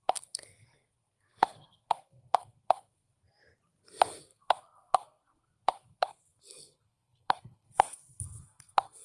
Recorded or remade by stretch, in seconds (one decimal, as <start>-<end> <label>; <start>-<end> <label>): 0.0-3.4 remade; 3.4-4.2 recorded; 4.2-9.0 remade